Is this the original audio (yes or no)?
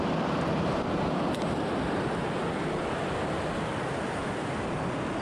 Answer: yes